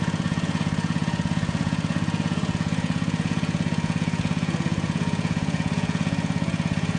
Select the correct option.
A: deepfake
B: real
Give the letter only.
A